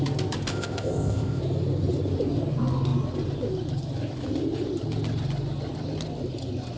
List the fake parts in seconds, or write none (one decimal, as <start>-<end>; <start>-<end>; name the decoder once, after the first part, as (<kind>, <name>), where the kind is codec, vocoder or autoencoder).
0.5-1.4 (codec, ZipCodec)